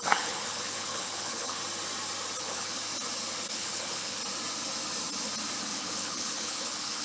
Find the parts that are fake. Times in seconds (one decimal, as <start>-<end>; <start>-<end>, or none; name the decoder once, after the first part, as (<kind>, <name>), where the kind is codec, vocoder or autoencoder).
0.0-1.6 (codec, HILCodec); 2.4-2.8; 3.5-4.2; 5.6-7.0